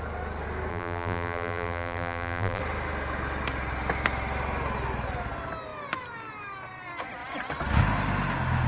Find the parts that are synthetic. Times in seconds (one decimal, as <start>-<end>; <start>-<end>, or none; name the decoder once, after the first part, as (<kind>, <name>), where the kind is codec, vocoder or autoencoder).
0.7-2.6 (vocoder, BigVGAN v2)